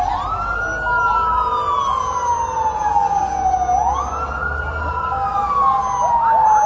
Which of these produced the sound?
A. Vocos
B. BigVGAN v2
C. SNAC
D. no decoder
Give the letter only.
D